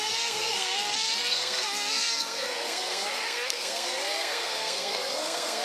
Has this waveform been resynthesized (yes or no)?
yes